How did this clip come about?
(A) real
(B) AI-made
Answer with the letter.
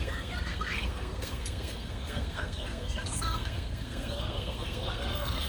B